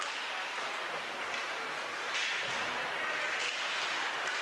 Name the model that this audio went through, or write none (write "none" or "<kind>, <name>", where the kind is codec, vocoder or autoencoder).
none